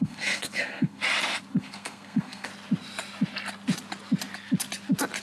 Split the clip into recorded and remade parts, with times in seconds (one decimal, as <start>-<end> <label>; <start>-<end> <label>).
0.0-1.0 remade; 1.0-1.6 recorded; 1.6-2.5 remade; 2.5-5.2 recorded